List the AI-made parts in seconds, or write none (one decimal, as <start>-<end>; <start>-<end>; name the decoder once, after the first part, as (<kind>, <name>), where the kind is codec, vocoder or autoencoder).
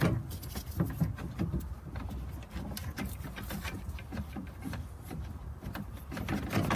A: 2.8-6.3 (vocoder, BigVGAN v2)